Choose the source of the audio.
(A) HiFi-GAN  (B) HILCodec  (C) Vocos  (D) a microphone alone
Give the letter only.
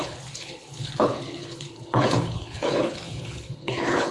B